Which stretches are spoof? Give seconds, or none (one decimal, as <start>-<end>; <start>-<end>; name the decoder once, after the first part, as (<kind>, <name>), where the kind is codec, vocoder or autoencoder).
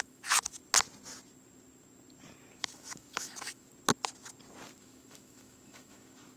0.0-0.6 (autoencoder, DAC-VAE); 2.6-3.7; 4.8-6.4